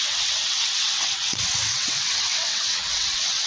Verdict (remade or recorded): remade